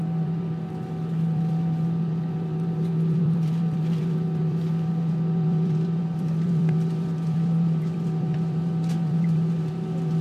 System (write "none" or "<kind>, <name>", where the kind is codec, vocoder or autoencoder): vocoder, BigVGAN v2